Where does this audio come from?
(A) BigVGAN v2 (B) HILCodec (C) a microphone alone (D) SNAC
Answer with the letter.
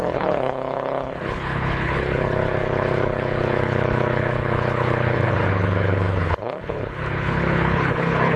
B